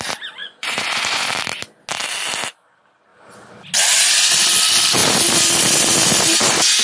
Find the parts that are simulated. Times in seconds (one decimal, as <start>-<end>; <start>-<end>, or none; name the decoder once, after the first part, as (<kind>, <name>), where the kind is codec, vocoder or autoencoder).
0.4-1.3 (vocoder, Vocos)